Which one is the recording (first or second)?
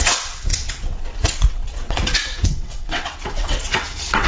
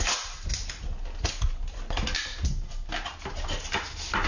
second